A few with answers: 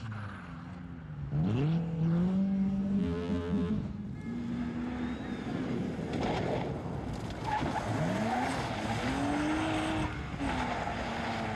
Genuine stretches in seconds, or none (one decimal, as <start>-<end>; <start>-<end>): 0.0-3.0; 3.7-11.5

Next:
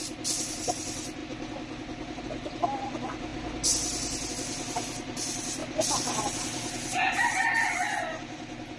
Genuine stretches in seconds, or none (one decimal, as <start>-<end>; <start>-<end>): 0.0-5.6; 6.2-8.8

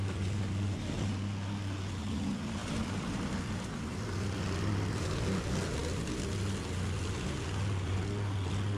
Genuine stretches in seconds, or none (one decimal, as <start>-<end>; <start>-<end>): 0.0-2.6; 5.0-8.8

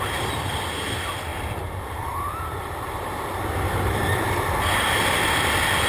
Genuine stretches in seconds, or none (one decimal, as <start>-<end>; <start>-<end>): 0.0-1.3; 4.3-5.9

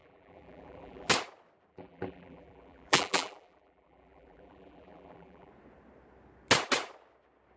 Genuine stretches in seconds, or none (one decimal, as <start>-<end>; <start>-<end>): 1.1-1.7; 5.5-7.6

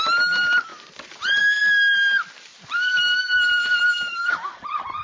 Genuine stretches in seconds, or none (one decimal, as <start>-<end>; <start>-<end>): 0.0-5.0

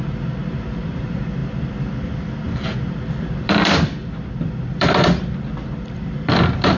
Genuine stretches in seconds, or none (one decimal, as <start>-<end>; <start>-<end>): 0.0-6.8

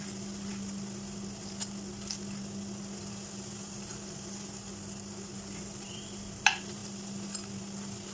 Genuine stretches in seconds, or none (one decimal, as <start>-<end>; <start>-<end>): 0.5-5.4; 6.8-7.6